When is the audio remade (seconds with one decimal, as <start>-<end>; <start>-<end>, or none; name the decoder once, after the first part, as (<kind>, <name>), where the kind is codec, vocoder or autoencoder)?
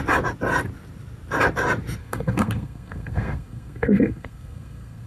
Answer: 2.0-5.1 (codec, SNAC)